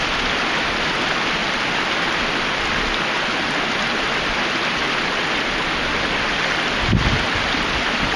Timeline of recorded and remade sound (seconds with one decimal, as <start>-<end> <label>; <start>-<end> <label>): 0.0-8.2 recorded